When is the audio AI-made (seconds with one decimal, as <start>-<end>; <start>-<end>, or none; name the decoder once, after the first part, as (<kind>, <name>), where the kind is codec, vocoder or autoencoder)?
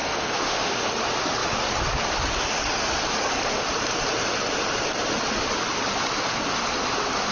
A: 0.0-0.7 (autoencoder, DAC-VAE)